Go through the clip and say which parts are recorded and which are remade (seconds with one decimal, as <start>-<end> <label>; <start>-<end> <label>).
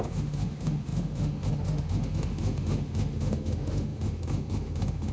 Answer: 0.0-5.1 remade